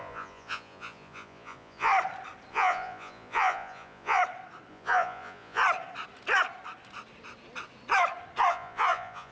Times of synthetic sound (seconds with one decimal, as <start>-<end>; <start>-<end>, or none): 0.0-1.9; 2.5-4.2; 4.7-5.6; 8.5-9.3